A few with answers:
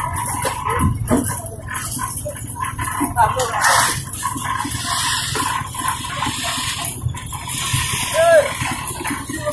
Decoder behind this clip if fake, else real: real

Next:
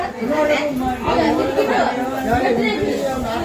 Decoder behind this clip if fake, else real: real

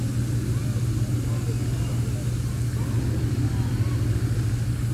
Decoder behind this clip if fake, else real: real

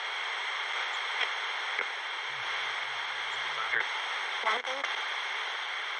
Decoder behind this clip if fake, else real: real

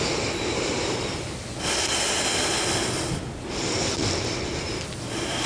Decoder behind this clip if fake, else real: real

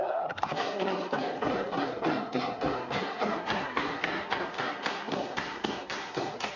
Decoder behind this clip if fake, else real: fake, codec, SNAC